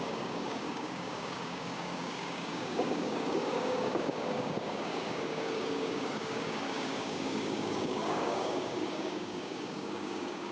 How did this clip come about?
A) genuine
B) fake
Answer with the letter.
B